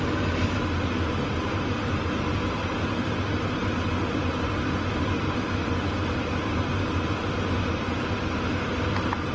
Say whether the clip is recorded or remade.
recorded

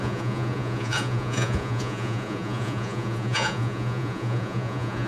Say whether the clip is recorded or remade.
remade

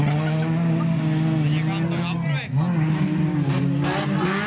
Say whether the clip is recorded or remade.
recorded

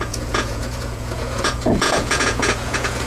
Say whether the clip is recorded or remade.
remade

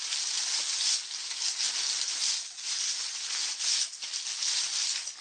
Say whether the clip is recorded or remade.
recorded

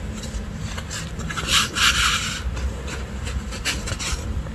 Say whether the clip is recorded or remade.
recorded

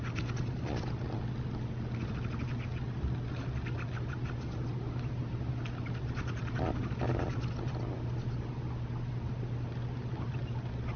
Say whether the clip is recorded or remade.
recorded